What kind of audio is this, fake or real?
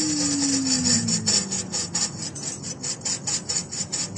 real